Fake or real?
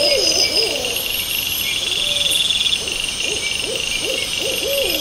real